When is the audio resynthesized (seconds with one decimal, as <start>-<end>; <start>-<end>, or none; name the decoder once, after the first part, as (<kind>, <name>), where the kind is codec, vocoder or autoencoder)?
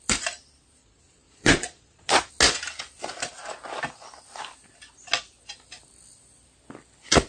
0.8-2.3 (vocoder, Vocos)